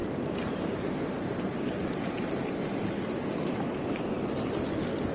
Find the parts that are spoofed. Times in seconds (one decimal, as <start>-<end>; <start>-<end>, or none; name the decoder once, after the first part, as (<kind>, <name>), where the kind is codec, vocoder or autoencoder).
0.0-3.1 (vocoder, BigVGAN v2)